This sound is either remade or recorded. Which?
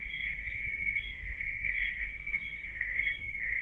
remade